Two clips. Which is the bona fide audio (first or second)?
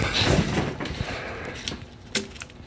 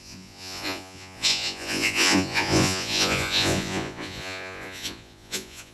first